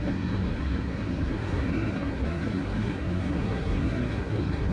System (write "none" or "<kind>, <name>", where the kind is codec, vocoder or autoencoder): codec, SNAC